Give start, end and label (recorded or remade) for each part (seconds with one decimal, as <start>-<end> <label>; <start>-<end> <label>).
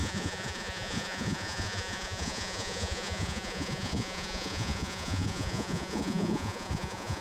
0.0-7.2 remade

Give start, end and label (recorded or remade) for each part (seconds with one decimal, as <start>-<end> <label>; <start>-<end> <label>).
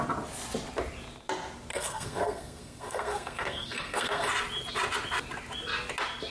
0.0-1.7 recorded; 1.7-4.3 remade; 4.3-6.3 recorded